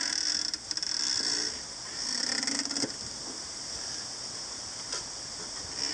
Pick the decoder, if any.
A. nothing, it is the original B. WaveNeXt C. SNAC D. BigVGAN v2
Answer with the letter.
A